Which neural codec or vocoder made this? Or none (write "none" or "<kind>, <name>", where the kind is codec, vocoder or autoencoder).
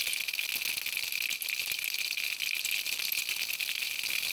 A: none